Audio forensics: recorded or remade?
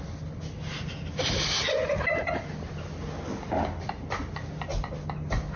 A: recorded